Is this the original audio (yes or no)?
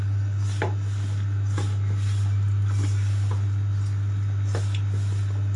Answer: yes